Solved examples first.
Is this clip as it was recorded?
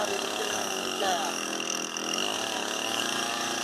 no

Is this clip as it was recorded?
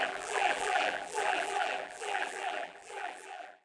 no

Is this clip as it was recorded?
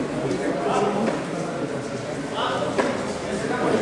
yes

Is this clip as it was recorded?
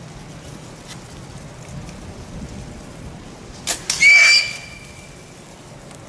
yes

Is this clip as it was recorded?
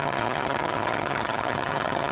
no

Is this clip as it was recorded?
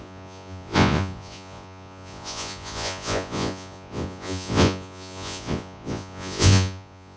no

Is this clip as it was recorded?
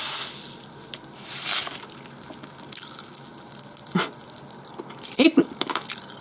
yes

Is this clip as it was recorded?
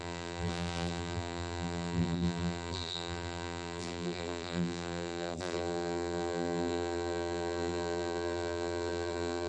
no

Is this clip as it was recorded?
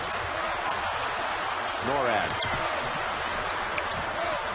yes